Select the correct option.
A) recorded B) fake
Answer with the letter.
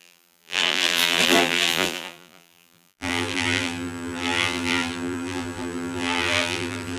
B